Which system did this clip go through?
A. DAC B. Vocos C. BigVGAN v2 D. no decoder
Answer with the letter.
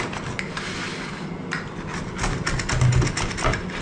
D